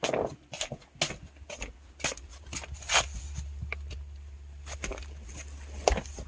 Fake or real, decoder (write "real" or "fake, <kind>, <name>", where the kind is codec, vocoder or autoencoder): real